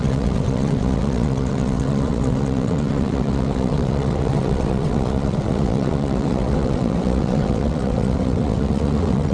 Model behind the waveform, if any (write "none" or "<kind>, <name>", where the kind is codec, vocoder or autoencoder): vocoder, WaveNeXt